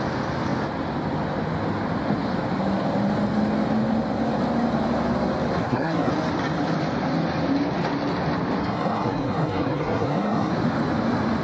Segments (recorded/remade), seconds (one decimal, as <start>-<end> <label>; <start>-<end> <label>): 0.0-5.6 recorded; 5.6-6.1 remade; 6.1-8.6 recorded; 8.6-10.5 remade; 10.5-11.4 recorded